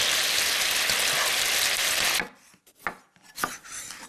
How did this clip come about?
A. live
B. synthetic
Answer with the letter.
A